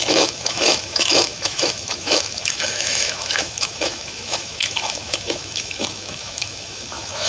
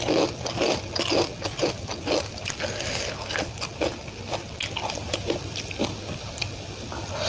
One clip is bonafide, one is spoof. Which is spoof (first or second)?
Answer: first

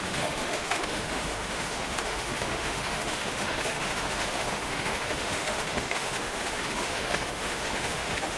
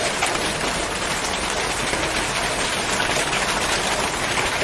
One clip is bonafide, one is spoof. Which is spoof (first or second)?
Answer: first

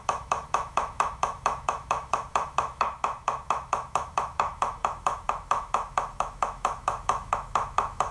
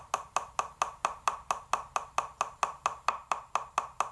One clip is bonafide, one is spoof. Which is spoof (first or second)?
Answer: first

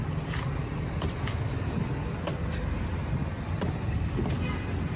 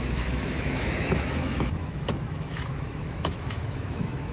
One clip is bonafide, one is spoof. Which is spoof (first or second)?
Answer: second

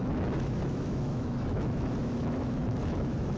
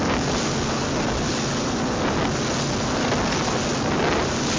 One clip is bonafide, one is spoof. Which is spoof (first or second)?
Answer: first